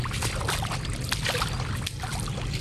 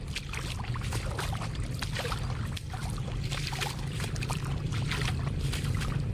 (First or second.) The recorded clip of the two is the first